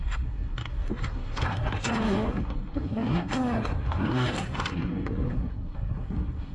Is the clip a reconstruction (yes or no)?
yes